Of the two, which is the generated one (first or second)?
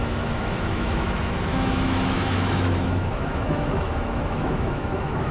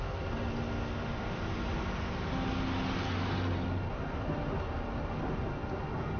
first